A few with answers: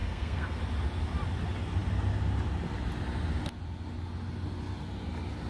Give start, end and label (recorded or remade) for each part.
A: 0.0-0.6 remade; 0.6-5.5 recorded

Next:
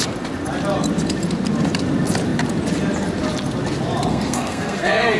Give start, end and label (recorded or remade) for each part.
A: 0.0-4.1 recorded; 4.1-5.2 remade

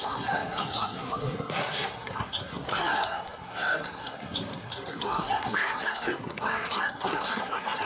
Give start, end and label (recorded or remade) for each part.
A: 0.0-7.9 remade

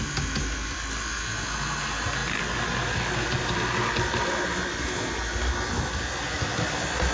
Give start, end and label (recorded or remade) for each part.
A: 0.0-7.1 recorded

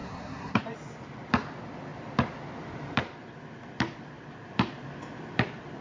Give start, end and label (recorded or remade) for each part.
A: 0.0-0.6 remade; 0.6-5.8 recorded